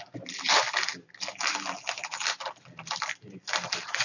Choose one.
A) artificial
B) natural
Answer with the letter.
B